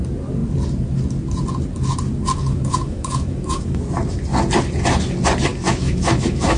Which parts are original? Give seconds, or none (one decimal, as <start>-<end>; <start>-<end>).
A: 0.0-2.4; 3.8-5.5